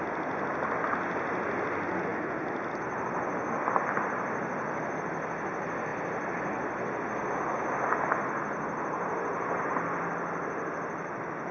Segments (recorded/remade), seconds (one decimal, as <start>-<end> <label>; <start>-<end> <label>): 0.0-11.5 recorded